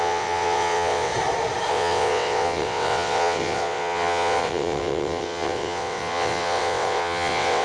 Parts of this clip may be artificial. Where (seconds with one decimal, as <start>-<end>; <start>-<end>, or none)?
0.0-1.1; 1.7-7.6